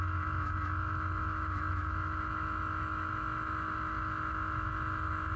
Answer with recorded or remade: remade